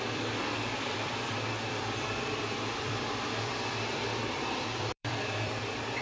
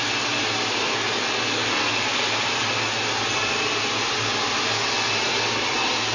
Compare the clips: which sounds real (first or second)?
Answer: second